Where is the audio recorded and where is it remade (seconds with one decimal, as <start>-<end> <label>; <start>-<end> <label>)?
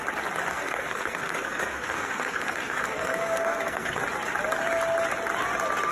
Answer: 0.0-0.5 recorded; 0.5-4.0 remade; 4.0-5.9 recorded